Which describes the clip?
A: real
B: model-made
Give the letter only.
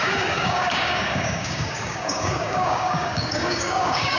B